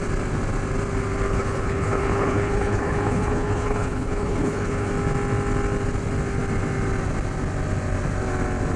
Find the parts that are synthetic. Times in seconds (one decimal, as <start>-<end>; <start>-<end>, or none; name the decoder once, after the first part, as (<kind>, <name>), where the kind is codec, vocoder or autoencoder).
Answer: 1.3-4.9 (codec, HILCodec)